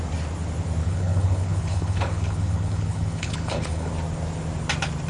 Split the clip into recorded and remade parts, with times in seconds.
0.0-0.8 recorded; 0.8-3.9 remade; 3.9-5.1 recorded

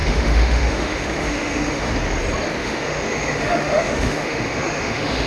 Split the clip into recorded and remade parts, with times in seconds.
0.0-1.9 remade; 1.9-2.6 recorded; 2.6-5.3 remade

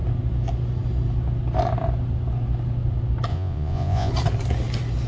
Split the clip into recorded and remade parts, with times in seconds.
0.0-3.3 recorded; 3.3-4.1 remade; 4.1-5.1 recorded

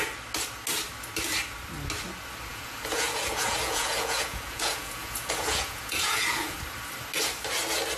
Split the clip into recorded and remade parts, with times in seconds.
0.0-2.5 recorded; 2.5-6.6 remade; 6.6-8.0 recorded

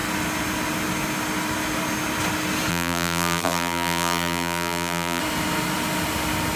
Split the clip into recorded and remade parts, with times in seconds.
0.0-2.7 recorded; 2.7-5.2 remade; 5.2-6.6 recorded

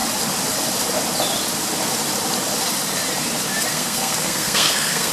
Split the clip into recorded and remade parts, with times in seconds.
0.0-3.7 recorded; 3.7-5.1 remade

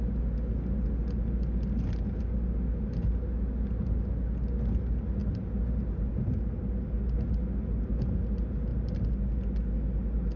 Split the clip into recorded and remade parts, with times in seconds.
0.0-10.4 recorded